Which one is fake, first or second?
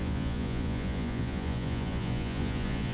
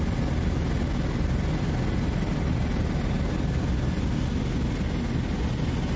first